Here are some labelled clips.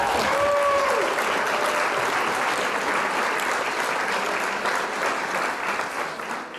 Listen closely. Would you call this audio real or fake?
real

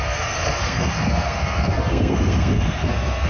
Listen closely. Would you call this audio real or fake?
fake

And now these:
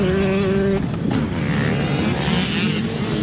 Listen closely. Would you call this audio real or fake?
real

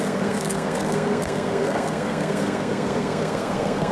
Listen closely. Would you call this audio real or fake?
fake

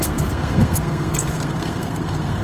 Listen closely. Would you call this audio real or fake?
fake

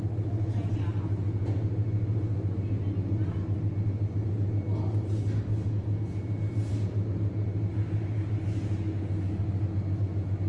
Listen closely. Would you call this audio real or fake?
real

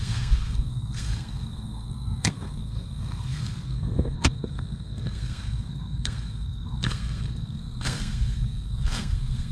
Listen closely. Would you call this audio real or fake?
fake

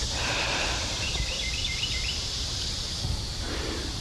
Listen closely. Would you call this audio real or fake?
real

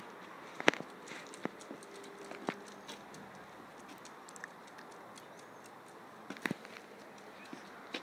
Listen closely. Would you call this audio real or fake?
real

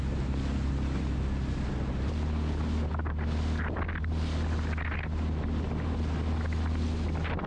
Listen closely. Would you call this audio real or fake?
real